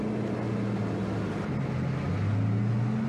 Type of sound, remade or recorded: recorded